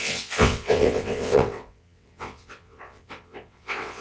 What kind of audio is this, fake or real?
fake